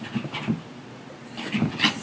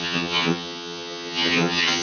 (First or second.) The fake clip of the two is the second